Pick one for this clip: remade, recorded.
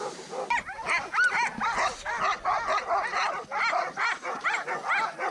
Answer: recorded